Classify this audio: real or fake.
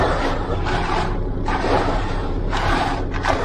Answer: fake